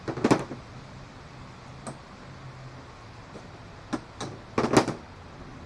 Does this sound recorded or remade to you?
recorded